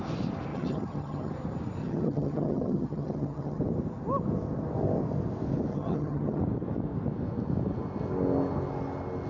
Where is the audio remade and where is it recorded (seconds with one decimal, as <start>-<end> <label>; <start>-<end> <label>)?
0.0-0.5 recorded; 0.5-1.3 remade; 1.3-1.8 recorded; 1.8-3.6 remade; 3.6-5.7 recorded; 5.7-6.4 remade; 6.4-9.3 recorded

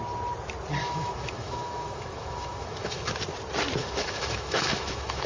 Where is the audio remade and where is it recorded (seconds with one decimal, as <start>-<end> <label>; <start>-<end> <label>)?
0.0-0.8 recorded; 0.8-3.1 remade; 3.1-3.8 recorded; 3.8-5.3 remade

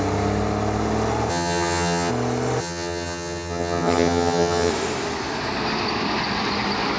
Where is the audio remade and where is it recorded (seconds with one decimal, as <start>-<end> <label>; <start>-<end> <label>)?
0.0-1.3 recorded; 1.3-2.1 remade; 2.1-2.6 recorded; 2.6-4.7 remade; 4.7-7.0 recorded